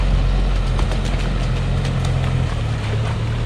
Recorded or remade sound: recorded